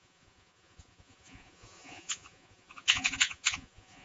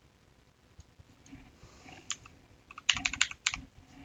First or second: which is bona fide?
second